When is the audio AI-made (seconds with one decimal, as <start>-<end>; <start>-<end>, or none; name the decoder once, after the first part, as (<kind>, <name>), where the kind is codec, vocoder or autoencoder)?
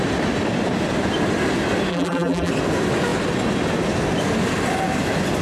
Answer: 1.9-2.5 (vocoder, BigVGAN v2)